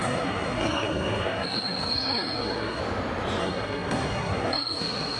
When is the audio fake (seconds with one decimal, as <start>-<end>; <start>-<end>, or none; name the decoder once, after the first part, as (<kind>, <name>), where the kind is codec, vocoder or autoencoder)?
0.0-2.8 (codec, SNAC); 3.4-5.2

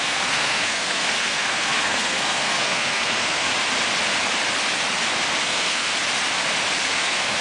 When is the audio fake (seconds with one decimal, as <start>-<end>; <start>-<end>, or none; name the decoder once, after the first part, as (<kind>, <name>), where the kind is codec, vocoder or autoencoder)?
0.0-3.5 (codec, SNAC); 5.4-5.9; 6.9-7.4

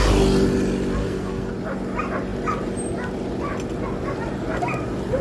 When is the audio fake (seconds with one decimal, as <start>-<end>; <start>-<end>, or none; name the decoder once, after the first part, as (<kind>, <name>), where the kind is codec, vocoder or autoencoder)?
1.0-1.5 (codec, SNAC)

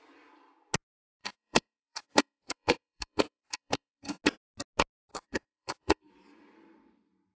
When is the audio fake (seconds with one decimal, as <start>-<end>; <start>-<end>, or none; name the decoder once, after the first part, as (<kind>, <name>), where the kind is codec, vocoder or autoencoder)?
1.2-4.2 (codec, SNAC); 5.1-6.1

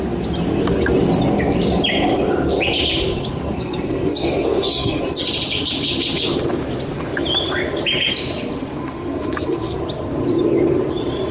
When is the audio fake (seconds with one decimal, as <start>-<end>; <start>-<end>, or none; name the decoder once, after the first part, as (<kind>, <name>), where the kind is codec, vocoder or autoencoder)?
3.5-5.0 (codec, SNAC); 8.7-9.8

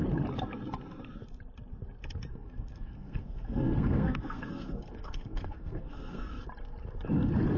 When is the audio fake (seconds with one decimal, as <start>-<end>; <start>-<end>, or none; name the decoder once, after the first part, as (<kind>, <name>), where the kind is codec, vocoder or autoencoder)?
2.3-6.3 (codec, SNAC)

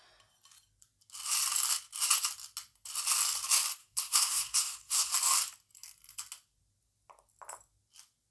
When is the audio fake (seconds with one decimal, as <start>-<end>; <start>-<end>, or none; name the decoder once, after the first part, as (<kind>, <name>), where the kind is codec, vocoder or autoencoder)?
3.8-5.1 (codec, SNAC)